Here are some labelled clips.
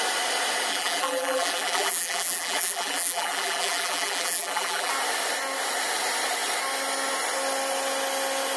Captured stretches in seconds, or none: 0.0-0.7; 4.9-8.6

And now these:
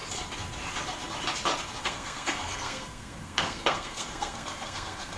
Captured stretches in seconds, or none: 0.0-1.8

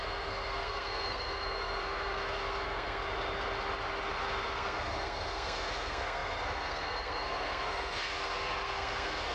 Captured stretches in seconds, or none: 3.0-4.2

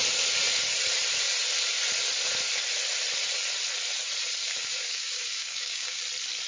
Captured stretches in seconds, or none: 0.0-4.4; 6.0-6.5

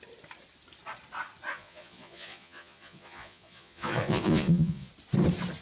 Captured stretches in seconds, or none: 0.0-1.5; 4.9-5.6

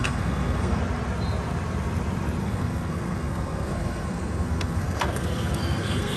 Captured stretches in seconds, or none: 0.8-2.4